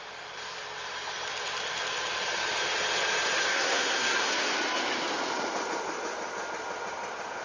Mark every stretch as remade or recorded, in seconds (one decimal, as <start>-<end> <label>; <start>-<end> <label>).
0.0-3.5 recorded; 3.5-4.3 remade; 4.3-7.4 recorded